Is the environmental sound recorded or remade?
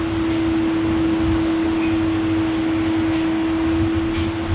recorded